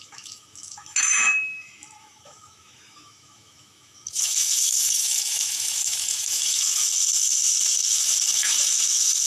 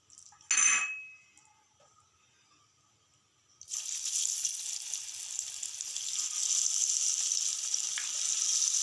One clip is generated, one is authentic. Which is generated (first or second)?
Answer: first